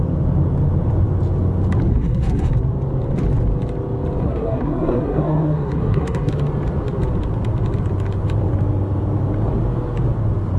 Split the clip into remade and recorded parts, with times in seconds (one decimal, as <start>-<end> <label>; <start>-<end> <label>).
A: 0.0-1.9 recorded; 1.9-2.5 remade; 2.5-4.2 recorded; 4.2-6.3 remade; 6.3-10.6 recorded